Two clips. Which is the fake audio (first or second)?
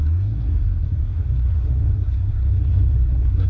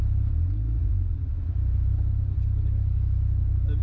first